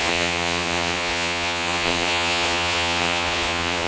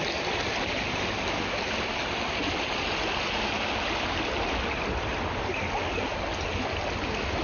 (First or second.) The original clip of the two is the second